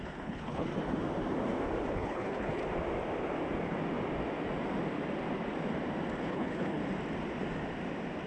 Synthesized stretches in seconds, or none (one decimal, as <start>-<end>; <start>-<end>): 0.0-0.7; 1.9-2.6; 6.2-6.8